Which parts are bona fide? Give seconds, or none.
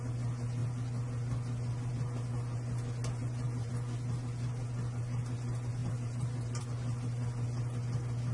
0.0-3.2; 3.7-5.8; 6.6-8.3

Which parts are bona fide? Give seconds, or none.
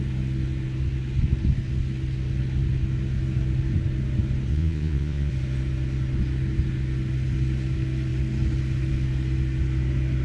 0.0-4.5; 5.3-10.2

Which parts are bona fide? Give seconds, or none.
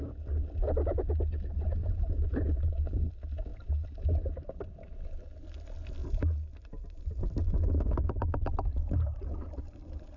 0.0-1.8; 3.1-3.5; 5.0-6.0; 9.7-10.2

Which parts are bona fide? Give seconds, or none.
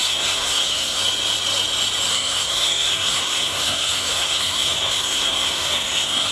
1.0-2.1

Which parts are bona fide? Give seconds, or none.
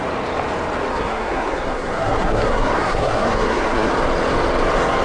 0.0-0.9; 3.9-5.0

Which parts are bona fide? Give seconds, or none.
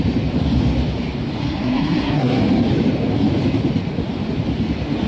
0.0-1.4; 2.4-5.1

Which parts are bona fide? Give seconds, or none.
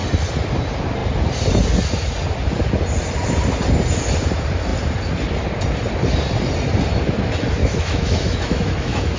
0.0-7.6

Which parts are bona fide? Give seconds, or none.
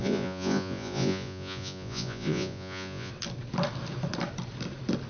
3.1-5.1